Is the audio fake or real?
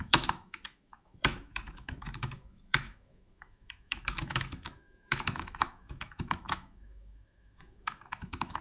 fake